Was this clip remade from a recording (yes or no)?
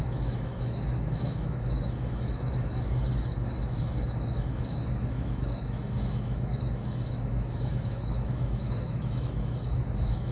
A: yes